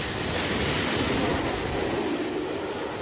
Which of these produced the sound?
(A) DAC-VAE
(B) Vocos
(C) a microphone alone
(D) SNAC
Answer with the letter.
C